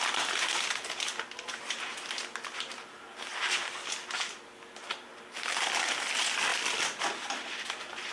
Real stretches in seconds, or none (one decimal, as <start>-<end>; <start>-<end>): 0.0-8.1

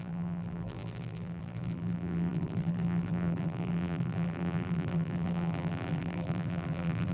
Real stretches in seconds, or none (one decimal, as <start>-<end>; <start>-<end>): none

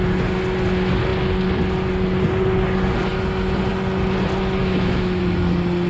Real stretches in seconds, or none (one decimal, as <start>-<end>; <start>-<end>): 0.0-4.6; 5.2-5.9

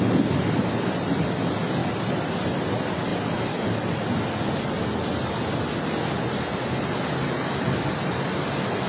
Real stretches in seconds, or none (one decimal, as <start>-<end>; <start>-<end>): 0.0-8.9

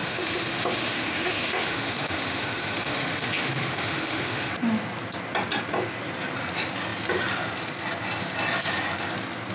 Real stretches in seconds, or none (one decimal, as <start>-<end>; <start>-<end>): 4.5-9.5

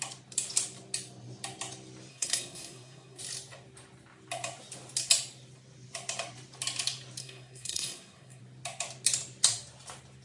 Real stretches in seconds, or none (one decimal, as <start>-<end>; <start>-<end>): 0.0-2.1; 3.2-7.2; 8.4-10.2

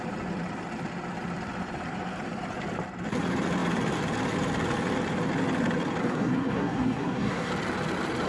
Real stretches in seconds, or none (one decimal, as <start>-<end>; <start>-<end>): 0.0-6.0; 7.5-8.3